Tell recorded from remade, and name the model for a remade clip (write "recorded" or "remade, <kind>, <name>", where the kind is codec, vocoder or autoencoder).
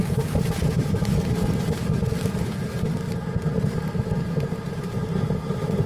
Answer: remade, vocoder, BigVGAN v2